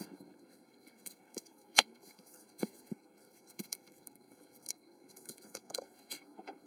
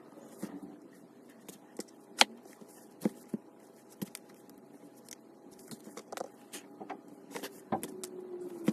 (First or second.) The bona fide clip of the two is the second